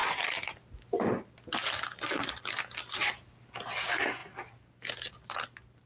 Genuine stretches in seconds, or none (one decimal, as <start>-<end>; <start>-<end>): 0.0-5.9